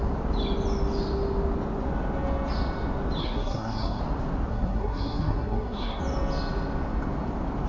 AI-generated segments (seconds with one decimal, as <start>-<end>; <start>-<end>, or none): 3.2-4.0; 4.5-6.0